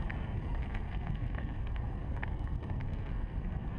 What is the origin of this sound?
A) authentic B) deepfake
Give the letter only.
B